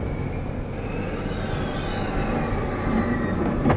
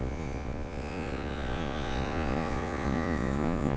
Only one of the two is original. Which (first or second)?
first